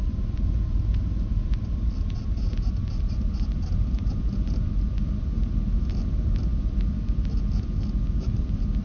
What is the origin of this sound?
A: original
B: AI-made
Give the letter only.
A